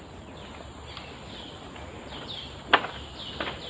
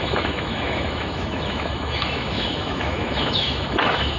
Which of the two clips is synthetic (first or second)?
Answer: second